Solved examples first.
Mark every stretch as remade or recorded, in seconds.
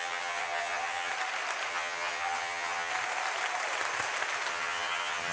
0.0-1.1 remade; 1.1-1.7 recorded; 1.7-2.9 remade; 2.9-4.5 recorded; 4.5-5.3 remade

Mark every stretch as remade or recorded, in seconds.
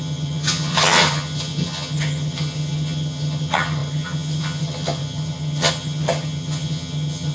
0.0-7.3 remade